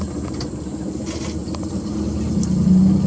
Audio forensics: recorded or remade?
recorded